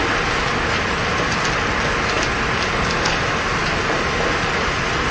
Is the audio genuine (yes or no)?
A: yes